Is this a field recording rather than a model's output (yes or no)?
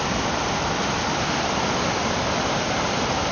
yes